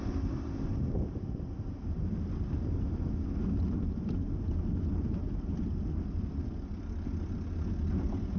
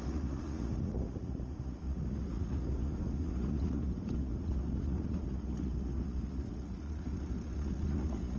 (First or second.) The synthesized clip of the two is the second